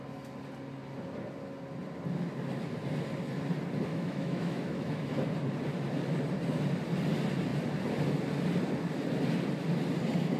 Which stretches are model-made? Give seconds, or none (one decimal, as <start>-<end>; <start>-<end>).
3.9-5.1